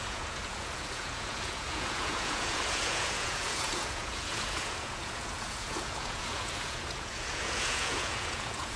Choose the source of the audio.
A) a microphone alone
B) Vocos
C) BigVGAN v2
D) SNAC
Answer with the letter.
B